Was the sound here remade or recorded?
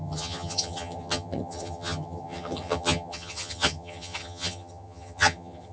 remade